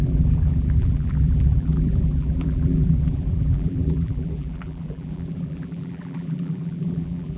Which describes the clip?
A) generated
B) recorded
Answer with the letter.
A